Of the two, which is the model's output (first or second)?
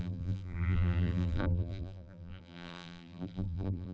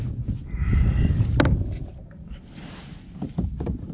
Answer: first